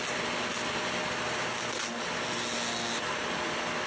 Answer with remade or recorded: recorded